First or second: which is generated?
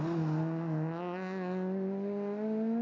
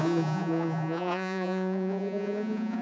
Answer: second